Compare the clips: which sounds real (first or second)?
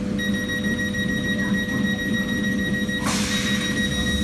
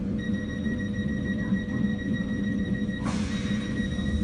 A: first